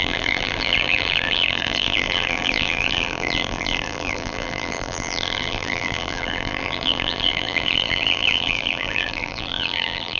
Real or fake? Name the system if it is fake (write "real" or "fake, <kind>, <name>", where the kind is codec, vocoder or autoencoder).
fake, vocoder, BigVGAN v2